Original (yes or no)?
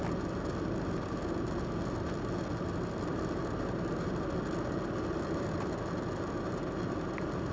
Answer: yes